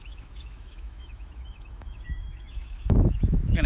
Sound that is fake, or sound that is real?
fake